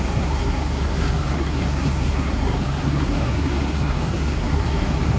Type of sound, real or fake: fake